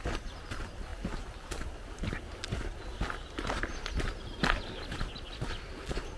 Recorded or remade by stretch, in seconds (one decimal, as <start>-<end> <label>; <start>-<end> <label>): 0.0-6.2 recorded